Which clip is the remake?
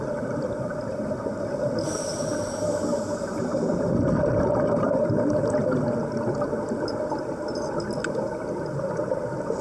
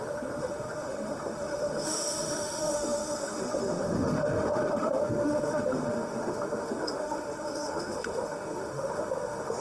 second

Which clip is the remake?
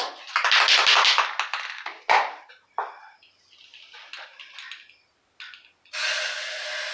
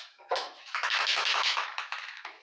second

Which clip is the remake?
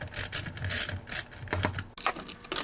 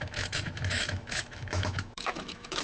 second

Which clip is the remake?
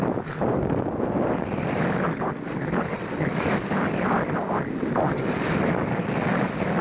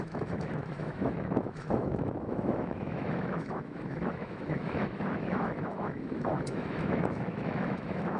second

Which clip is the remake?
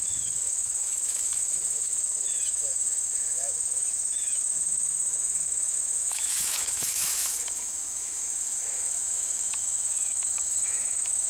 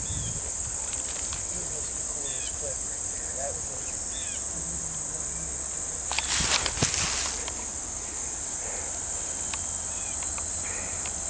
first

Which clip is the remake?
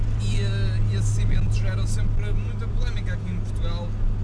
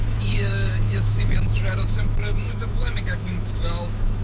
second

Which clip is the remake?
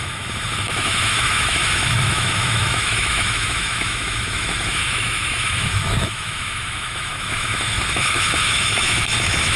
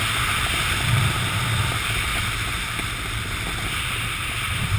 first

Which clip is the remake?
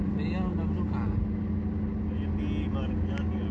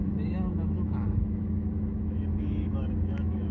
second